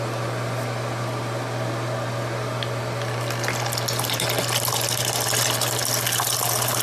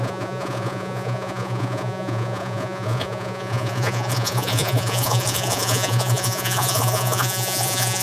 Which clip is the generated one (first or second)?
second